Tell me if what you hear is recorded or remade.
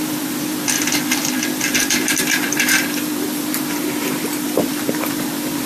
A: remade